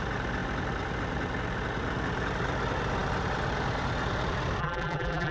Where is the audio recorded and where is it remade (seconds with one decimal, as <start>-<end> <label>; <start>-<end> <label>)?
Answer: 0.0-4.6 recorded; 4.6-5.3 remade